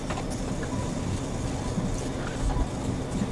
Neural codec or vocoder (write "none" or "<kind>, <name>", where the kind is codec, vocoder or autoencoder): none